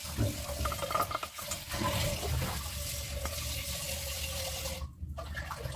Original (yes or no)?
yes